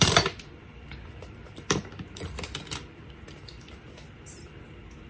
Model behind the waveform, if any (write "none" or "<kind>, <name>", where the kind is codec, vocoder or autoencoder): vocoder, BigVGAN v2